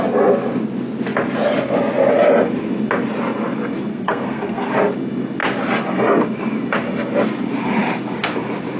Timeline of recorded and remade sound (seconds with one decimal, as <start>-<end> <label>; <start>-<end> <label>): 0.0-3.9 recorded; 3.9-4.7 remade; 4.7-8.8 recorded